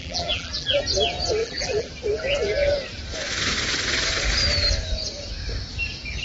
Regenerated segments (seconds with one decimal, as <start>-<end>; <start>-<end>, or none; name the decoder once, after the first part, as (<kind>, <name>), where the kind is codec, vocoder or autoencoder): 0.0-0.8 (vocoder, BigVGAN v2); 1.4-1.9

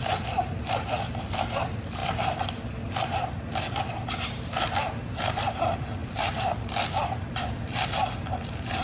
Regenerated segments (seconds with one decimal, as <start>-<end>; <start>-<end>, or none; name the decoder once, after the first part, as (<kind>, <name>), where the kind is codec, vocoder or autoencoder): none

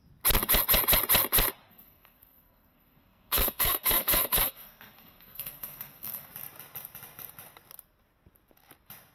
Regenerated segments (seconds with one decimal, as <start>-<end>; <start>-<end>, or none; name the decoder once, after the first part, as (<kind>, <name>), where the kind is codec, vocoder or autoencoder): 1.7-6.3 (codec, SNAC)

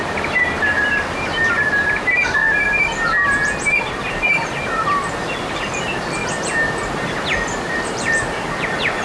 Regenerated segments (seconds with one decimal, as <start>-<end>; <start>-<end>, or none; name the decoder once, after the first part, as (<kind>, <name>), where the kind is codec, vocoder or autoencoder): 0.0-2.4 (vocoder, BigVGAN v2); 4.1-6.2; 7.7-9.0

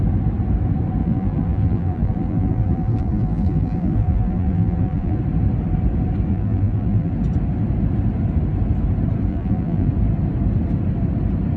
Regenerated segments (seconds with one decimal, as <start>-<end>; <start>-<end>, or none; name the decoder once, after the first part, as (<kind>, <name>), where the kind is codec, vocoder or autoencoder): 1.0-5.2 (vocoder, BigVGAN v2); 6.3-7.1; 9.3-9.9

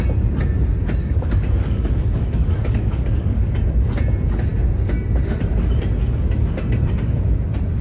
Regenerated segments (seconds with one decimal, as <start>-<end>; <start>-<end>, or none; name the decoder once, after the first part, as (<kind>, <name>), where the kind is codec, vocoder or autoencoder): 1.0-3.5 (codec, DAC)